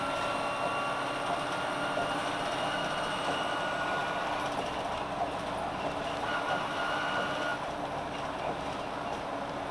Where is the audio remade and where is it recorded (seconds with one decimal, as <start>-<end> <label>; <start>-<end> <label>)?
0.0-9.7 recorded